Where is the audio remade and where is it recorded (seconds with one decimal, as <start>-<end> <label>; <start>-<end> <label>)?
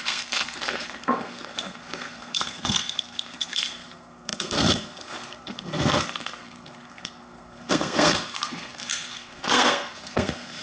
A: 0.0-10.6 remade